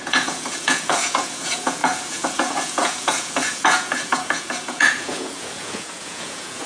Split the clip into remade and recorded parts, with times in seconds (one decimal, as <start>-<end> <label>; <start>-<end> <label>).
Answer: 0.0-6.7 remade